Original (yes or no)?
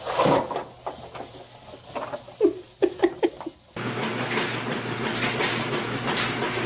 yes